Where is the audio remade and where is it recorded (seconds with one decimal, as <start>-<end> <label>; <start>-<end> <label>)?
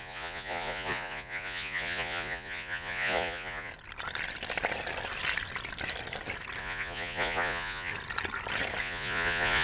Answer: 0.0-3.7 remade; 3.7-6.6 recorded; 6.6-7.9 remade; 7.9-8.8 recorded; 8.8-9.6 remade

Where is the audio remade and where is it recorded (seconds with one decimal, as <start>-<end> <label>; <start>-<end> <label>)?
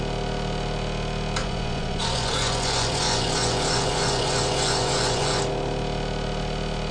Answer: 0.0-1.4 recorded; 1.4-5.4 remade; 5.4-6.9 recorded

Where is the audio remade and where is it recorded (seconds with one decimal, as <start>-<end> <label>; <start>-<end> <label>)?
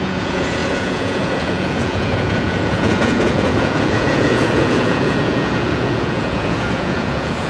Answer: 0.0-7.5 remade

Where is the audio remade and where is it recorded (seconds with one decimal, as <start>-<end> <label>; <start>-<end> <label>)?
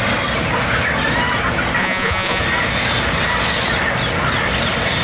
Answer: 0.0-1.8 recorded; 1.8-2.4 remade; 2.4-5.0 recorded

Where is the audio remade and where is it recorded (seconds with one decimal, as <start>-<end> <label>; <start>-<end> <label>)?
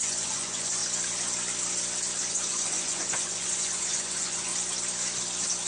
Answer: 0.0-0.8 remade; 0.8-2.3 recorded; 2.3-4.5 remade; 4.5-5.7 recorded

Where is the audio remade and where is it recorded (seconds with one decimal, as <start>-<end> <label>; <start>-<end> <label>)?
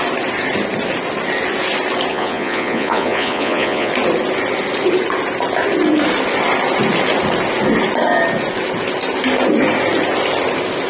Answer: 0.0-2.1 recorded; 2.1-3.9 remade; 3.9-10.9 recorded